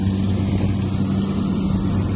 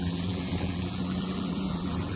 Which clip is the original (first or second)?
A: first